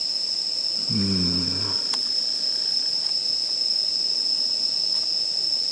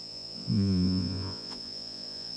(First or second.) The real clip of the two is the first